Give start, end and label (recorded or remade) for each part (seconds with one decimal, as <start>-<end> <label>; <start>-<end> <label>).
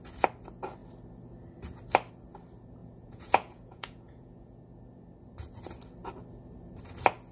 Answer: 0.0-2.8 recorded; 2.8-4.6 remade; 4.6-7.3 recorded